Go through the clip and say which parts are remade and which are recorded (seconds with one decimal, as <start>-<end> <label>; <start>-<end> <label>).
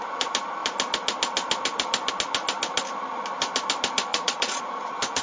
0.0-4.1 recorded; 4.1-4.6 remade; 4.6-5.2 recorded